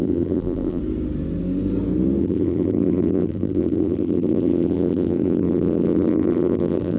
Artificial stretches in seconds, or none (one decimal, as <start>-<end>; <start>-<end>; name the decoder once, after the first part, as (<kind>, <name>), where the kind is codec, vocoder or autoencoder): 0.0-0.8 (vocoder, BigVGAN v2); 2.2-7.0